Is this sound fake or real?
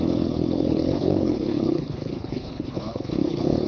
fake